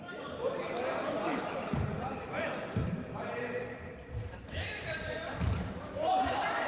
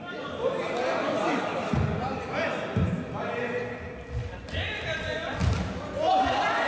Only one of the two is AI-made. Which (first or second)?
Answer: first